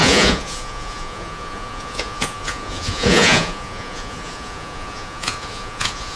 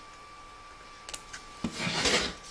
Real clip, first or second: second